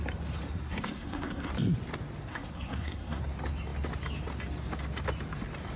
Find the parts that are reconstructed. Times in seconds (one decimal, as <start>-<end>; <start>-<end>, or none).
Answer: 0.7-1.5; 2.3-3.2